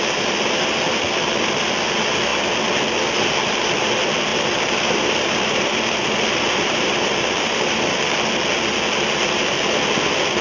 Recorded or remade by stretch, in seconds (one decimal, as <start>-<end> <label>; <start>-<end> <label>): 0.0-4.3 recorded; 4.3-8.3 remade; 8.3-10.4 recorded